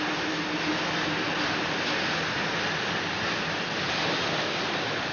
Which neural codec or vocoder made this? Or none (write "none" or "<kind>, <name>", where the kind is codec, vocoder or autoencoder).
none